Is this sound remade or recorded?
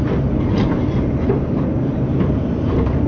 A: recorded